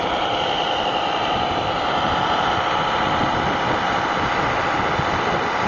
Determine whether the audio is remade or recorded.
recorded